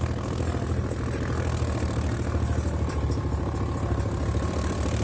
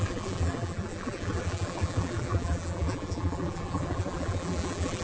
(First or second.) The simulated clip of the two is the second